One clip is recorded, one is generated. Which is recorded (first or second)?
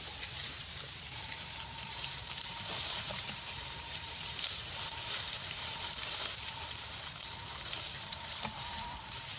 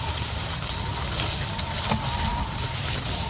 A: second